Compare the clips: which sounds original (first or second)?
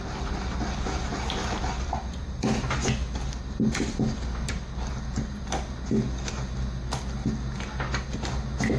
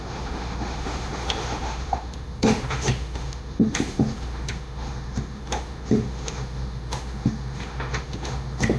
first